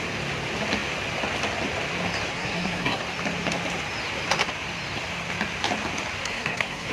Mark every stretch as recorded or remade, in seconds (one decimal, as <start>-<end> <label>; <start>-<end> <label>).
0.0-2.3 recorded; 2.3-3.0 remade; 3.0-6.2 recorded; 6.2-6.9 remade